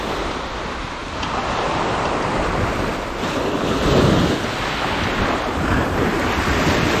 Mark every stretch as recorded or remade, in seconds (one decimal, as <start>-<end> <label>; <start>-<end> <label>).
0.0-7.0 recorded